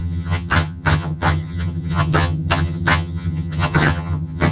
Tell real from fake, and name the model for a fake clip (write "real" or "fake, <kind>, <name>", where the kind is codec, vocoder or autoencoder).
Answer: fake, vocoder, HiFi-GAN